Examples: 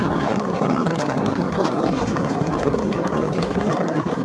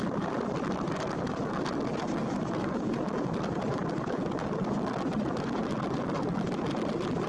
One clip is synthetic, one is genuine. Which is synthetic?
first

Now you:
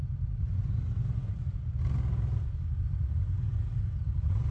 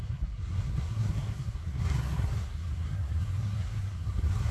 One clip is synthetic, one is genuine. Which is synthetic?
second